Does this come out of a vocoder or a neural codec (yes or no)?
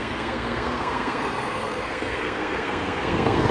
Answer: yes